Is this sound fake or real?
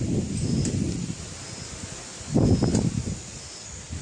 real